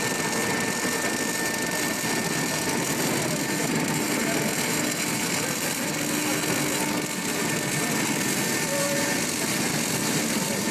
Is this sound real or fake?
real